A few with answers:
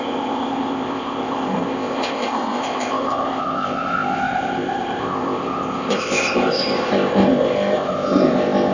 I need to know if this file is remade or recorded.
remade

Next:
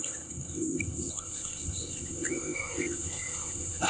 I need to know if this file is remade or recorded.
remade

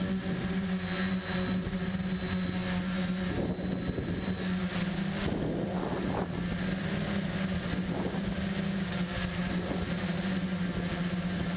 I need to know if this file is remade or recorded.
recorded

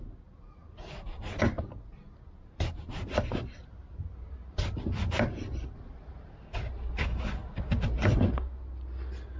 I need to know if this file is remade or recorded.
recorded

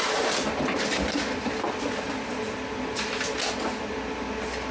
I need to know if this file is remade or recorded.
recorded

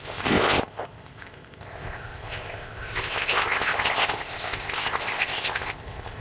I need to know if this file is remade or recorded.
remade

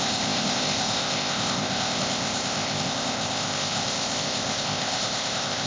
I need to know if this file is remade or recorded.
remade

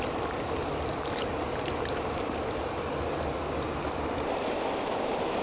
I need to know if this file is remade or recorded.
recorded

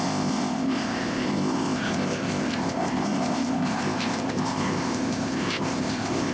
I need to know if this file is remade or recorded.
remade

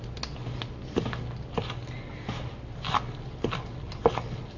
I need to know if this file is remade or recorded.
recorded